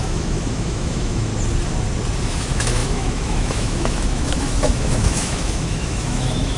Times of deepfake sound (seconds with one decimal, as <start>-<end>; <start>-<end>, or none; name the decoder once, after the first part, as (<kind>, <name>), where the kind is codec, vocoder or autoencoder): 0.0-1.3 (autoencoder, DAC-VAE); 2.2-6.6